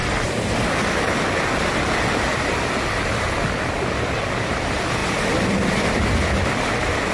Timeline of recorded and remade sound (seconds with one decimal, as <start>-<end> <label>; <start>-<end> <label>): 0.0-5.0 recorded; 5.0-6.2 remade; 6.2-7.1 recorded